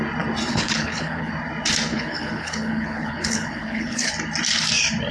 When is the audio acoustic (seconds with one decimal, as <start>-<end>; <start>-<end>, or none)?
0.0-0.5; 1.3-1.9; 4.1-5.1